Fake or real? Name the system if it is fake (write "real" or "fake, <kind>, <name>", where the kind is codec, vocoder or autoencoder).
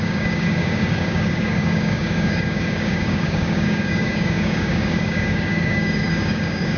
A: fake, codec, DAC